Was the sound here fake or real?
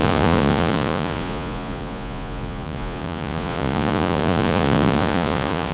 fake